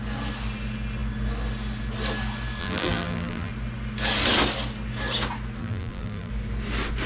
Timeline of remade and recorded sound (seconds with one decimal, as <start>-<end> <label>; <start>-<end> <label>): 0.0-2.6 recorded; 2.6-3.5 remade; 3.5-5.6 recorded; 5.6-6.3 remade; 6.3-7.1 recorded

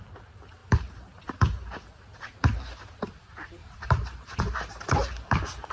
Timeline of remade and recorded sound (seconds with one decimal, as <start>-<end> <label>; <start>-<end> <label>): 0.0-0.6 recorded; 0.6-1.4 remade; 1.4-3.6 recorded; 3.6-4.4 remade; 4.4-5.7 recorded

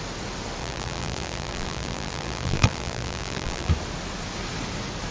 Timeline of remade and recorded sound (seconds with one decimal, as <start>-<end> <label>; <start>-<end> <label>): 0.0-0.6 recorded; 0.6-3.7 remade; 3.7-5.1 recorded

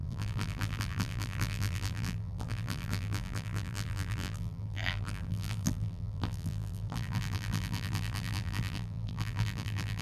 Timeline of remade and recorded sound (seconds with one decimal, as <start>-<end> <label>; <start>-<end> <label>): 0.0-10.0 remade

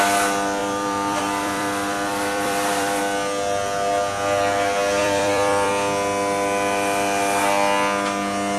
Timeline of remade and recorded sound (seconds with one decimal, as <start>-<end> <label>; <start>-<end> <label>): 0.0-0.6 recorded; 0.6-3.0 remade; 3.0-5.0 recorded; 5.0-5.7 remade; 5.7-8.6 recorded

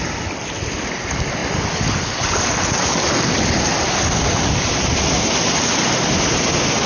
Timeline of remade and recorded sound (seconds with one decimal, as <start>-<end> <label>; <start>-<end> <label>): 0.0-6.9 recorded

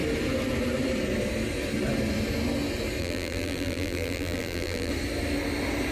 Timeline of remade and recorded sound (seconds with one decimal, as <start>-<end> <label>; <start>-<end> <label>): 0.0-3.0 recorded; 3.0-4.9 remade; 4.9-5.9 recorded

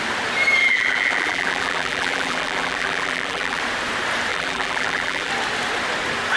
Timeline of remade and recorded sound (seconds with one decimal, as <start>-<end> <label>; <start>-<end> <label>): 0.0-0.6 recorded; 0.6-3.6 remade; 3.6-4.3 recorded; 4.3-5.3 remade; 5.3-6.4 recorded